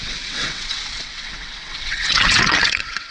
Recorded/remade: remade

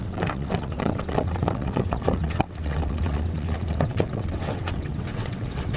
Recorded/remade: remade